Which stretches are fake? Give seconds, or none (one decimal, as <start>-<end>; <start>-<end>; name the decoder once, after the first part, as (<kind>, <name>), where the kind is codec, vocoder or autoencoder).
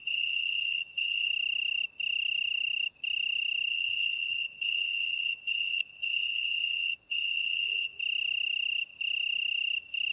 0.0-1.3 (vocoder, Vocos); 3.7-8.0